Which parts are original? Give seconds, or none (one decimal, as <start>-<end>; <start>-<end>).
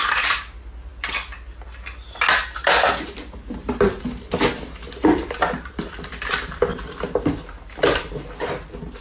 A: 0.9-5.6; 6.7-7.4